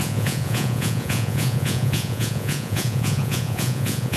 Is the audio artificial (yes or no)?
yes